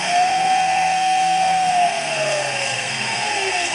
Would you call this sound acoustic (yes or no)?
no